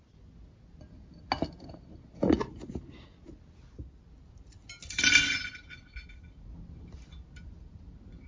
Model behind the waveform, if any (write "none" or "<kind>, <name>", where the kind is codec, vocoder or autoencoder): none